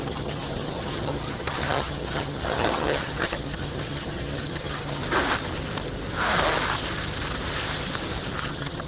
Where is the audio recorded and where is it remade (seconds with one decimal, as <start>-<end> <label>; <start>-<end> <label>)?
0.0-5.0 remade; 5.0-8.4 recorded; 8.4-8.9 remade